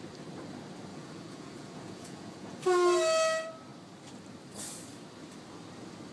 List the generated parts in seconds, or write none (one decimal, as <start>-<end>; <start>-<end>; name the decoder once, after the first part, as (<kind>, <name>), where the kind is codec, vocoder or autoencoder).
0.9-2.6 (vocoder, Vocos)